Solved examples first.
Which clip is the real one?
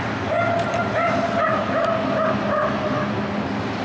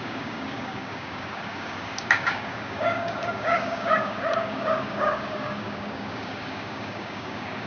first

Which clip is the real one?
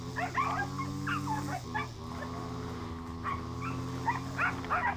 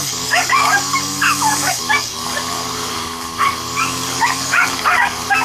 first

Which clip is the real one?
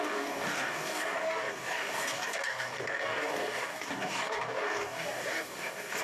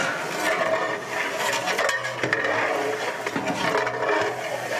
second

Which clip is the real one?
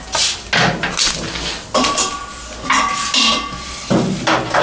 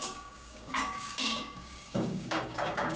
first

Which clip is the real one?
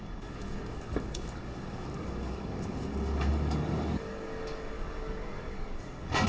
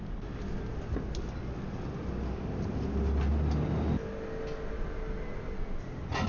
second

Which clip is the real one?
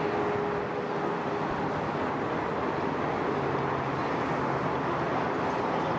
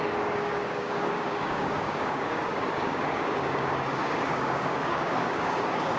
first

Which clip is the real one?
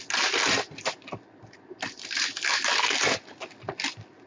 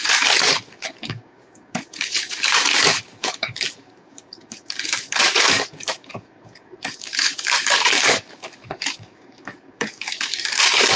first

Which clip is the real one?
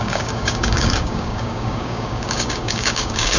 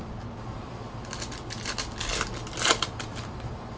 second